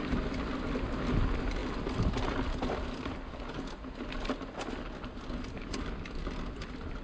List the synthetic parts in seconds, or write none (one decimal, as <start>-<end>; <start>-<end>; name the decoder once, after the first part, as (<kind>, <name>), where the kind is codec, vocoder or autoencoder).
none